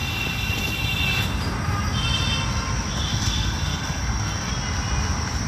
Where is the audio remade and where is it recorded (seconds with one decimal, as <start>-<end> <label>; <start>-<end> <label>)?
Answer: 0.0-3.1 recorded; 3.1-4.5 remade; 4.5-5.5 recorded